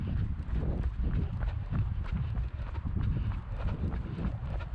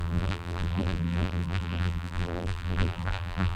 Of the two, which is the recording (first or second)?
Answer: first